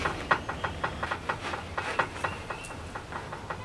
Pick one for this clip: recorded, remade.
recorded